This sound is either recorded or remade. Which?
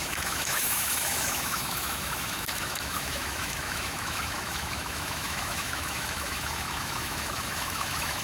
remade